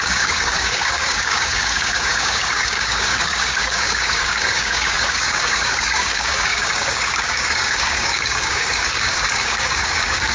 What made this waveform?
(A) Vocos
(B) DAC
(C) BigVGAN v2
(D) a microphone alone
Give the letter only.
B